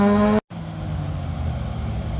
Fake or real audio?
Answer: real